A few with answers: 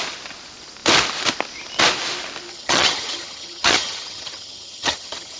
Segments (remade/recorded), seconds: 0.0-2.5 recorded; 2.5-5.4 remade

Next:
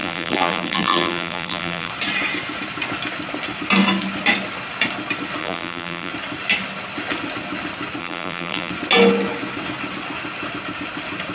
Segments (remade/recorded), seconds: 0.0-1.9 remade; 1.9-5.4 recorded; 5.4-6.1 remade; 6.1-8.0 recorded; 8.0-8.7 remade; 8.7-11.3 recorded

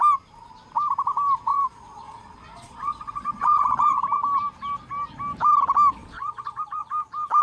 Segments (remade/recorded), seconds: 0.0-1.5 recorded; 1.5-4.0 remade; 4.0-6.0 recorded; 6.0-6.9 remade; 6.9-7.4 recorded

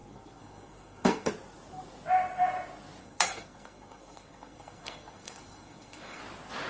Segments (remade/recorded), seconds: 0.0-1.3 remade; 1.3-3.0 recorded; 3.0-6.2 remade; 6.2-6.7 recorded

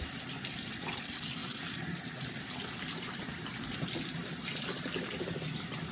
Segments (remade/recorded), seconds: 0.0-5.9 recorded

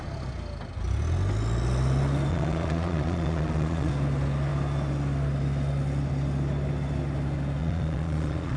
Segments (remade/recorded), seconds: 0.0-2.3 recorded; 2.3-3.9 remade; 3.9-7.6 recorded; 7.6-8.6 remade

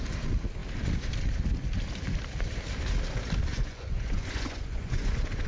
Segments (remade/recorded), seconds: 0.0-3.5 recorded; 3.5-5.5 remade

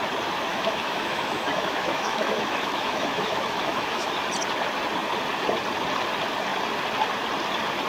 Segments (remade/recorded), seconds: 0.0-0.5 recorded; 0.5-4.1 remade; 4.1-7.9 recorded